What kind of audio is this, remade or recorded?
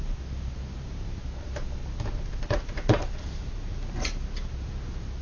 recorded